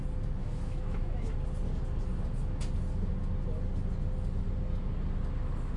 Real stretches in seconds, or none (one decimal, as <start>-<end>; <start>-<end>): 0.0-0.4; 1.3-5.8